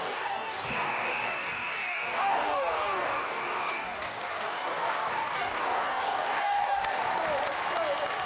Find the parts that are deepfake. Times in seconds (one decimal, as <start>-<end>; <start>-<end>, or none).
0.0-7.1